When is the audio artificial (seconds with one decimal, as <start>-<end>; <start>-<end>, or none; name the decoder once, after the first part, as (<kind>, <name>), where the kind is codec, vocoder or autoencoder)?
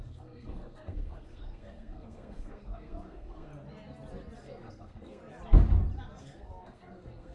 0.0-3.5 (codec, SNAC); 4.4-5.2; 6.2-7.3